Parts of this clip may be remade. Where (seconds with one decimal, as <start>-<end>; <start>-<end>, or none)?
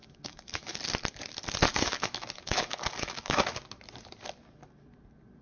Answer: 0.0-0.8; 1.7-3.4